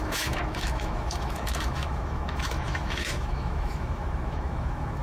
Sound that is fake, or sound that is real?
fake